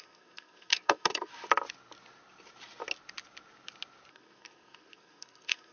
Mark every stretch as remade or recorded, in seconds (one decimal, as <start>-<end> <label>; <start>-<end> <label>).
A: 0.0-1.3 remade; 1.3-4.1 recorded; 4.1-5.7 remade